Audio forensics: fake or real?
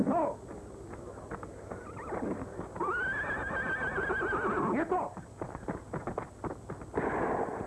real